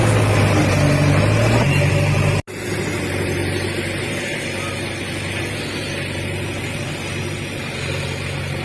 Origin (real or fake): real